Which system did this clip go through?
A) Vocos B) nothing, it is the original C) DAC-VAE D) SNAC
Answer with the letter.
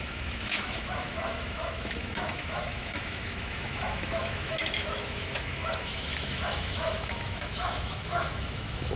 C